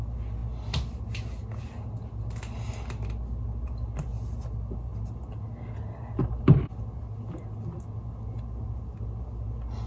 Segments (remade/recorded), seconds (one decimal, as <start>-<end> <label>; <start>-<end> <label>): 0.0-9.9 recorded